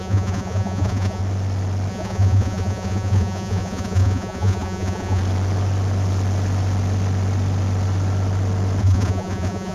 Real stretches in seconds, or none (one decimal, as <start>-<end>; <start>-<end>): 1.2-1.9; 5.2-8.8